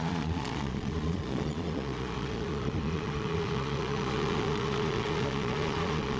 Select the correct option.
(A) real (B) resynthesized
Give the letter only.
B